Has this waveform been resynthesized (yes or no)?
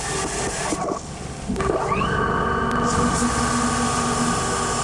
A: no